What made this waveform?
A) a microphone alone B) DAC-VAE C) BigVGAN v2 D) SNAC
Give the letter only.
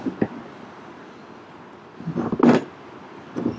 A